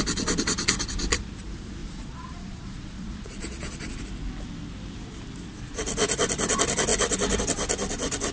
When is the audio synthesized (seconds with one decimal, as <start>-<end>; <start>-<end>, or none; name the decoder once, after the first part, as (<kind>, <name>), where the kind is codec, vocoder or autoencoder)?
1.8-4.0 (vocoder, Vocos)

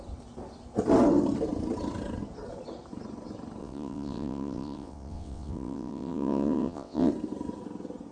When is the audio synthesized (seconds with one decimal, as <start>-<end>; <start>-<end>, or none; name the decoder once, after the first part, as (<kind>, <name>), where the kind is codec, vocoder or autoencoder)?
3.6-7.1 (vocoder, WaveNeXt)